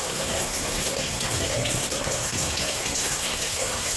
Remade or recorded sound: remade